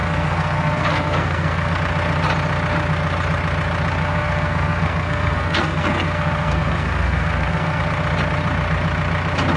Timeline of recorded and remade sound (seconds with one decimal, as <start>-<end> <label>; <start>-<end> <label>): 0.0-1.8 remade; 1.8-4.0 recorded; 4.0-7.8 remade; 7.8-9.6 recorded